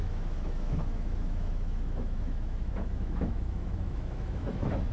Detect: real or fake fake